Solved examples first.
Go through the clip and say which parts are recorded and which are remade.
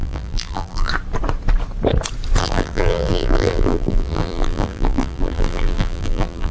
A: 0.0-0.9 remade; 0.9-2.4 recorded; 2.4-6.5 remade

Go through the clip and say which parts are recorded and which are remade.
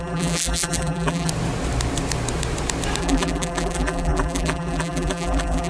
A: 0.0-1.3 remade; 1.3-3.0 recorded; 3.0-5.7 remade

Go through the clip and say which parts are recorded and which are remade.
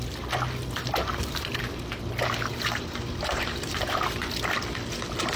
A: 0.0-1.0 recorded; 1.0-4.2 remade; 4.2-5.4 recorded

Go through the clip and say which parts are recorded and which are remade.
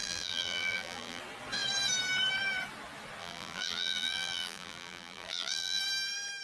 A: 0.0-1.2 remade; 1.2-3.2 recorded; 3.2-5.8 remade; 5.8-6.4 recorded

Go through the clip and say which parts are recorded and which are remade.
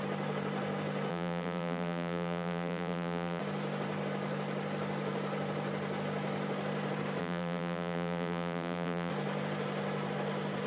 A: 0.0-1.1 recorded; 1.1-3.4 remade; 3.4-7.2 recorded; 7.2-9.1 remade; 9.1-10.7 recorded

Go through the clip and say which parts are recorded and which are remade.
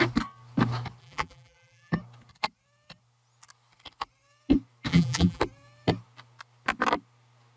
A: 0.0-1.0 recorded; 1.0-1.9 remade; 1.9-4.9 recorded; 4.9-5.4 remade; 5.4-7.6 recorded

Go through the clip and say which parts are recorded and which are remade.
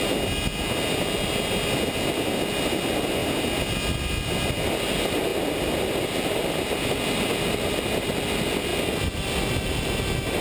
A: 0.0-10.4 recorded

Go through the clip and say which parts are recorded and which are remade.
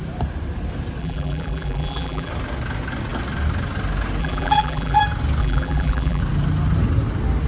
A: 0.0-1.0 recorded; 1.0-2.3 remade; 2.3-4.2 recorded; 4.2-5.0 remade; 5.0-5.4 recorded; 5.4-6.2 remade; 6.2-7.5 recorded